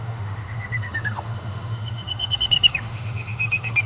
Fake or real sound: fake